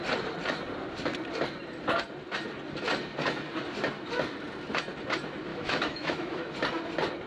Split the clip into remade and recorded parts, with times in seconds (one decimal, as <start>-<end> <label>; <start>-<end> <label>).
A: 0.0-5.5 recorded; 5.5-6.5 remade; 6.5-7.3 recorded